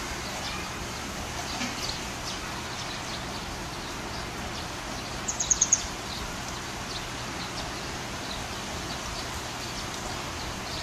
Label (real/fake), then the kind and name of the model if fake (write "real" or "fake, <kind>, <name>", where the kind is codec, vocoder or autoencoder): real